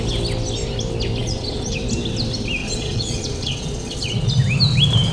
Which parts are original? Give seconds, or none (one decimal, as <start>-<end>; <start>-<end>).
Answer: 0.0-1.2; 1.7-2.6; 4.3-5.1